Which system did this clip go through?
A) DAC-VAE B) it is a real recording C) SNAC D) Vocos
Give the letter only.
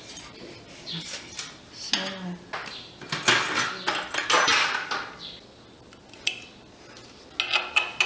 B